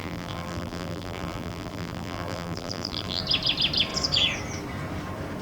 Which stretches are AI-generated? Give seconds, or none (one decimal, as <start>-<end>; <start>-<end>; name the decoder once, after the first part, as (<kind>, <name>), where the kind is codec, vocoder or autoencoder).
0.0-3.2 (vocoder, BigVGAN v2)